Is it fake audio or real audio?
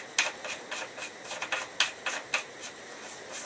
real